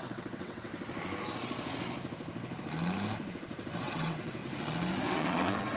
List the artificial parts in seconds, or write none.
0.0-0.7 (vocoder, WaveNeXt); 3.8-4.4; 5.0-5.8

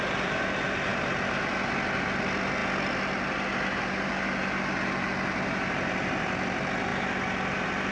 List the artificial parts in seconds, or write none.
none

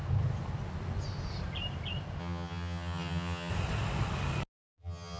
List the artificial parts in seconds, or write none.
2.2-3.5 (vocoder, HiFi-GAN); 4.8-5.2

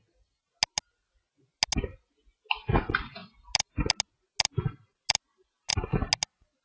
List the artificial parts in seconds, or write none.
none